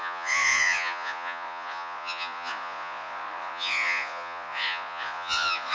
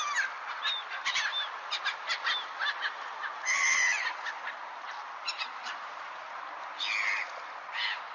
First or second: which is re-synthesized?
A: first